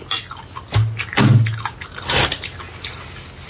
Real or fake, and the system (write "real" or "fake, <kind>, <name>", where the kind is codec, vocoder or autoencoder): real